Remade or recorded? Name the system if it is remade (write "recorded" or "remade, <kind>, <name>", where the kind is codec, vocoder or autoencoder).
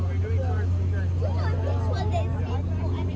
recorded